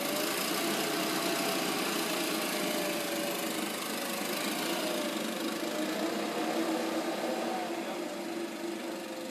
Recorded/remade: recorded